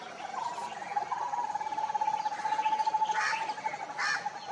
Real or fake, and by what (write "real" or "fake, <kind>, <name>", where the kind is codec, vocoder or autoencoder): real